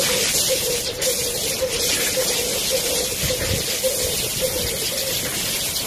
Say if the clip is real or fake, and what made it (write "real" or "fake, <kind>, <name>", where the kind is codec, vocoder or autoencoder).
real